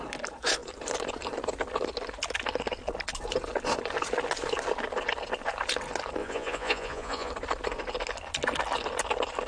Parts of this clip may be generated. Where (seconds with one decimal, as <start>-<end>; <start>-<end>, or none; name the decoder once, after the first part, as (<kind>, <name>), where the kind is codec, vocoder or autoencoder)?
6.2-7.3 (vocoder, Vocos)